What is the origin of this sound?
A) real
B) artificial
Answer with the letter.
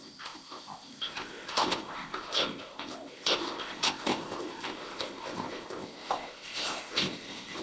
B